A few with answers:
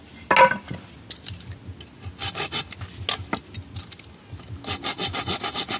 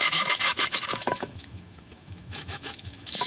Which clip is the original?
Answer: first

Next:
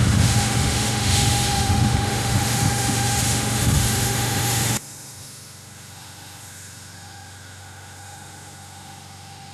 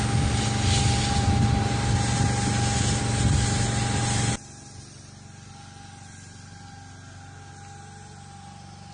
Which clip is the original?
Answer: second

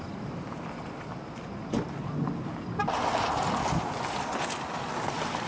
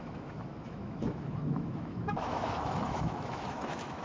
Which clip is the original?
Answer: first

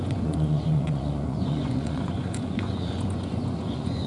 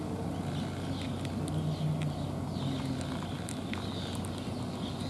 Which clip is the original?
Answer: second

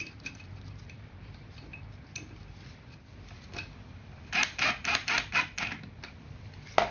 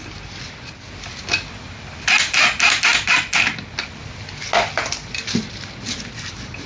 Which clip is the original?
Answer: second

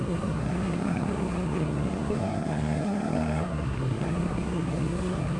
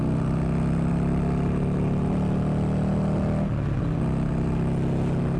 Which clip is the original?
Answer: second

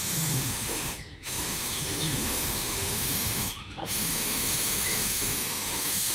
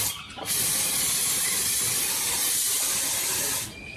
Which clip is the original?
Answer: second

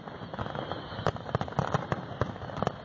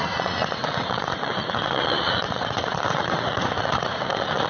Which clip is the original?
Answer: first